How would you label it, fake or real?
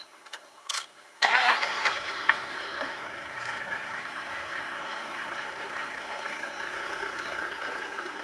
fake